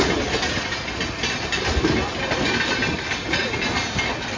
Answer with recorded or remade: recorded